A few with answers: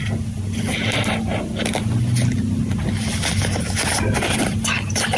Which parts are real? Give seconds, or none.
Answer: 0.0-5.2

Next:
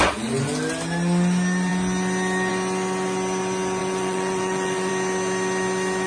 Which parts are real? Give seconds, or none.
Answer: 0.0-3.8; 4.9-6.1